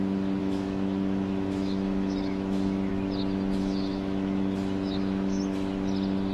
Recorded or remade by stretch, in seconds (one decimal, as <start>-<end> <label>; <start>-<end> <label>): 0.0-0.4 recorded; 0.4-2.9 remade; 2.9-3.6 recorded; 3.6-5.4 remade; 5.4-6.3 recorded